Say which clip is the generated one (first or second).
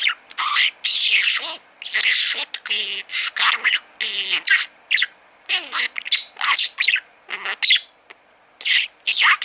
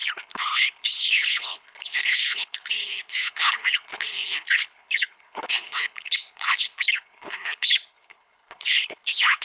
second